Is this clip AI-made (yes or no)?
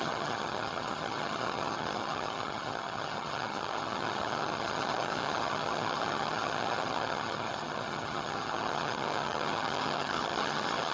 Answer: yes